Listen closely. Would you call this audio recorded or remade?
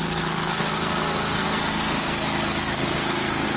remade